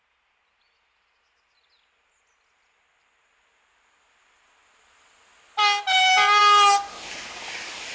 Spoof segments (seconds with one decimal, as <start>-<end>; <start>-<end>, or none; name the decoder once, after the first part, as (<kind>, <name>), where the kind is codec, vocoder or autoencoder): none